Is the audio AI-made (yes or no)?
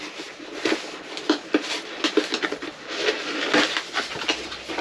no